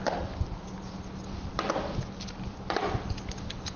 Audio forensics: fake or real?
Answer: real